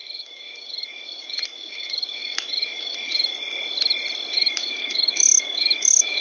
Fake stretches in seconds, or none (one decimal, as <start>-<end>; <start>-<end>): 0.0-3.3; 4.3-6.2